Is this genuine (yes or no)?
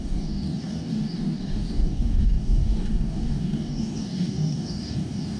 no